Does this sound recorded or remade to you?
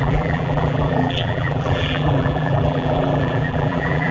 remade